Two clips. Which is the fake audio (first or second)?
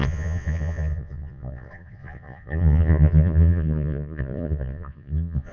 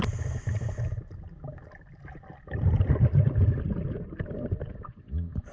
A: first